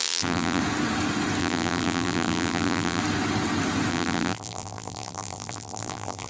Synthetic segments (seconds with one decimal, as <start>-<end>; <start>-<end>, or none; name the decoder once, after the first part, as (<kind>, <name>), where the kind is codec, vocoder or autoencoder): 0.0-0.6 (vocoder, BigVGAN v2); 1.4-3.0; 3.9-6.3